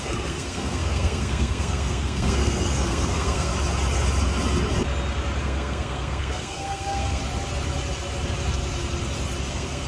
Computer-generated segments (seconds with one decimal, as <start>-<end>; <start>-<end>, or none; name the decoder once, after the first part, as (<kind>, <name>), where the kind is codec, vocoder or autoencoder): 0.0-3.5 (codec, SNAC); 5.4-7.2; 9.5-9.9